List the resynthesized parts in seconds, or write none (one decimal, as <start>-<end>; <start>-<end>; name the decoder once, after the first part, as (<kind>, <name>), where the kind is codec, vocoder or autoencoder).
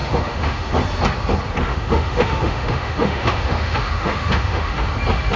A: 0.0-0.7 (autoencoder, DAC-VAE); 1.7-4.9